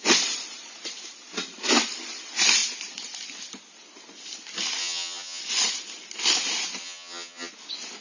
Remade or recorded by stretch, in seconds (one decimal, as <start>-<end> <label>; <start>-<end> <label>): 0.0-4.8 recorded; 4.8-5.4 remade; 5.4-6.8 recorded; 6.8-7.5 remade; 7.5-8.0 recorded